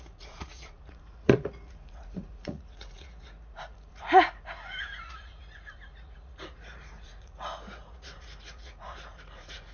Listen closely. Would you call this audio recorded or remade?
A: remade